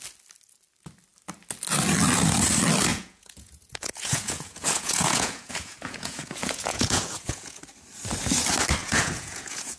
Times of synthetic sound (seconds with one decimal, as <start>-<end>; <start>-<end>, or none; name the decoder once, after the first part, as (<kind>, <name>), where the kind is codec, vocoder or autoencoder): 2.9-7.6 (vocoder, Vocos); 8.8-9.8